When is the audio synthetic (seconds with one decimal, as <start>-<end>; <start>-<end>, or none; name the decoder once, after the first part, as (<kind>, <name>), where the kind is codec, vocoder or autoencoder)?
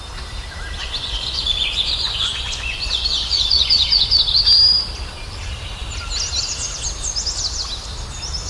0.8-4.2 (vocoder, Vocos)